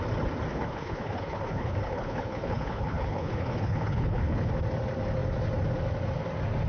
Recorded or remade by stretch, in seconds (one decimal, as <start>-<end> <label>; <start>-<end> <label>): 0.0-0.5 recorded; 0.5-4.5 remade; 4.5-6.7 recorded